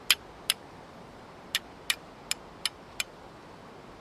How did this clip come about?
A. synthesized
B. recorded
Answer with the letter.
B